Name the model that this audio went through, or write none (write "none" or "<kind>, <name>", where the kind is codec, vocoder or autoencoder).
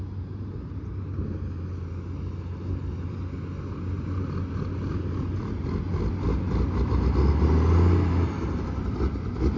none